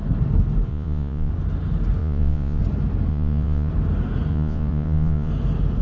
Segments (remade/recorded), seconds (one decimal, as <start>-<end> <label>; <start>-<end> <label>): 0.0-0.7 recorded; 0.7-1.3 remade; 1.3-2.0 recorded; 2.0-2.6 remade; 2.6-3.1 recorded; 3.1-3.7 remade; 3.7-4.3 recorded; 4.3-5.3 remade; 5.3-5.8 recorded